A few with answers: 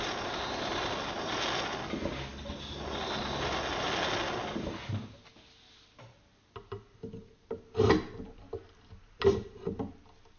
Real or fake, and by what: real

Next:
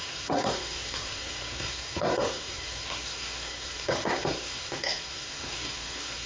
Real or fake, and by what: fake, codec, SNAC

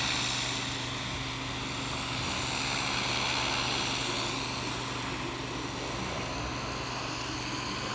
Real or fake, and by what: real